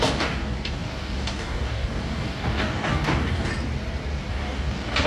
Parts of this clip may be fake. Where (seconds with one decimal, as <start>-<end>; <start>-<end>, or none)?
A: 0.0-3.5; 4.3-5.1